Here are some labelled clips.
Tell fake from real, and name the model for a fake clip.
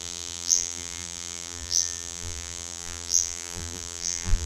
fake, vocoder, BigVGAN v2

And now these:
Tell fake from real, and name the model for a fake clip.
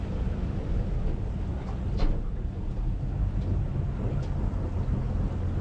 real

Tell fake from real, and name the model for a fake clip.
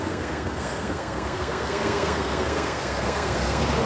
fake, codec, SNAC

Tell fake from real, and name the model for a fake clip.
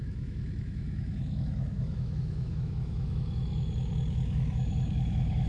fake, autoencoder, DAC-VAE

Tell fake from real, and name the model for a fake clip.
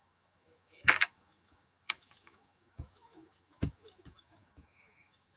fake, autoencoder, DAC-VAE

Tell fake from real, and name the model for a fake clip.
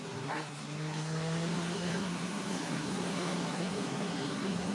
fake, codec, SNAC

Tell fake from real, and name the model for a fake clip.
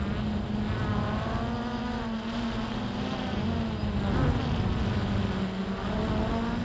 real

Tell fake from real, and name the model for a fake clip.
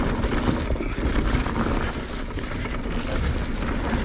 real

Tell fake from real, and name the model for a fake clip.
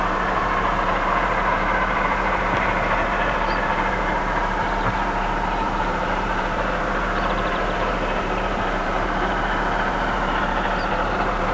fake, vocoder, BigVGAN v2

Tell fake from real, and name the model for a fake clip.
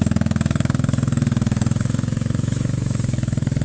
fake, autoencoder, DAC-VAE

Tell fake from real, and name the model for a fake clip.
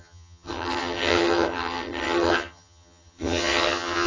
fake, vocoder, HiFi-GAN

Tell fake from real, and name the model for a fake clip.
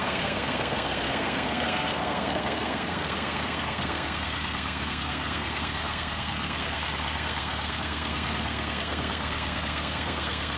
fake, codec, SNAC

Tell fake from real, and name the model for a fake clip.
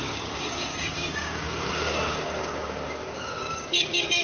fake, codec, DAC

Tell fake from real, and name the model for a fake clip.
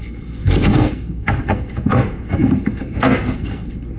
fake, codec, SNAC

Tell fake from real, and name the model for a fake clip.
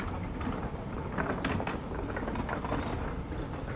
real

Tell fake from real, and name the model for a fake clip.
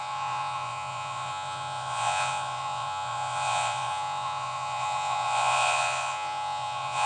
fake, vocoder, Vocos